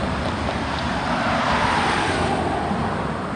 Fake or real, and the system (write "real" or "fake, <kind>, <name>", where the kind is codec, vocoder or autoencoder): real